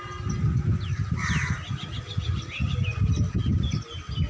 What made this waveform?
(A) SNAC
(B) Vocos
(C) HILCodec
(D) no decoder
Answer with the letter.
D